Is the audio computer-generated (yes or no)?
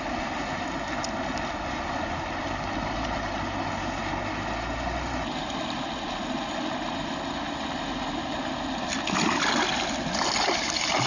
no